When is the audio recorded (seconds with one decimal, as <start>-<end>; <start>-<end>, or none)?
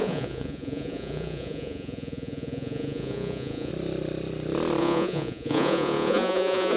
3.7-4.8